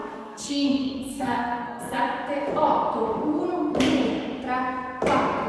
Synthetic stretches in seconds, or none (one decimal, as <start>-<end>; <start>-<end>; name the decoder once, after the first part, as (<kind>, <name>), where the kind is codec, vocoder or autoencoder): 0.0-2.0 (codec, SNAC)